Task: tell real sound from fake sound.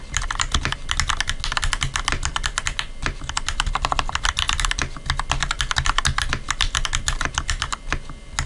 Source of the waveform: real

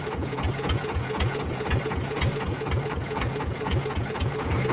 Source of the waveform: fake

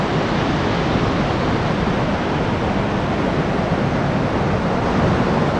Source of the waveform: real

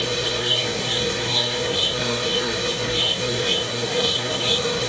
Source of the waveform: fake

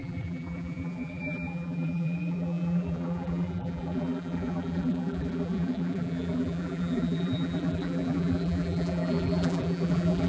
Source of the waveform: fake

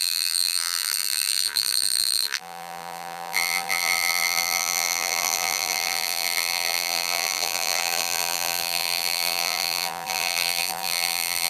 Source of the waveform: fake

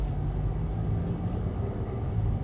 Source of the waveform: fake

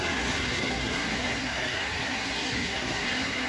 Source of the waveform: fake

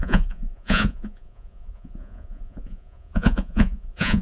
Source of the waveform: fake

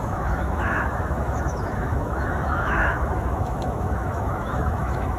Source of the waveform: fake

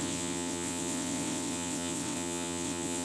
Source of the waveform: fake